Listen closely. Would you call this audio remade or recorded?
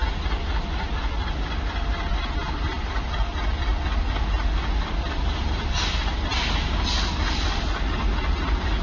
recorded